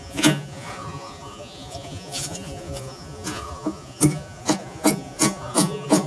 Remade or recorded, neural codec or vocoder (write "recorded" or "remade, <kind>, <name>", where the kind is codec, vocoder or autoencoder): remade, vocoder, Vocos